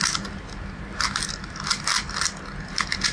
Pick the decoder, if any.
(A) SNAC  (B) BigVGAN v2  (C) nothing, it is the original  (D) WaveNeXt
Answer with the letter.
C